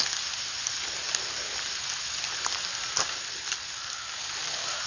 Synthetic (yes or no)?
no